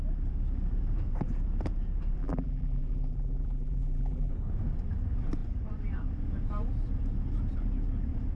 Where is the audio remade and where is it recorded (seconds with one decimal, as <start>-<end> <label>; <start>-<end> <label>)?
0.0-2.2 recorded; 2.2-4.3 remade; 4.3-8.3 recorded